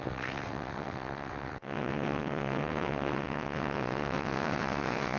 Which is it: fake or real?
fake